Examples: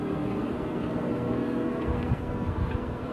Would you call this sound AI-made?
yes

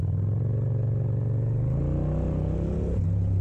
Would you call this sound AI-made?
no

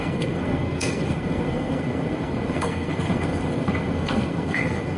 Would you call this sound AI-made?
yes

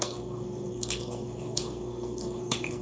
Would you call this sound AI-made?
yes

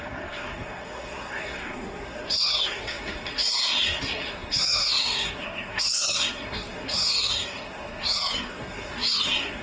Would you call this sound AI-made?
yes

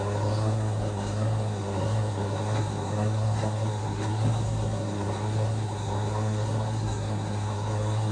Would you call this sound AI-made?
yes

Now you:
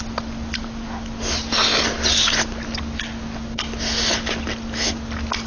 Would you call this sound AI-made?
no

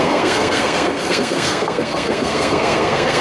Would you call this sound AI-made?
yes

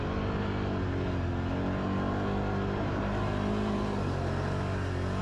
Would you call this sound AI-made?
no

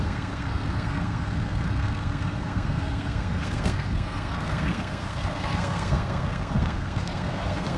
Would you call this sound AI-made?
yes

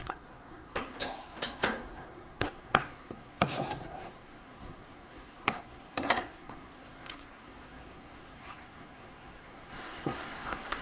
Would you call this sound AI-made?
yes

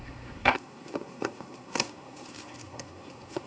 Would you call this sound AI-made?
yes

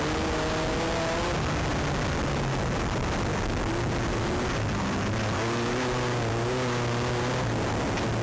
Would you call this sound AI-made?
no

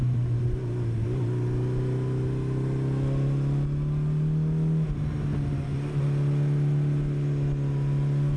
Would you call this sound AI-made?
no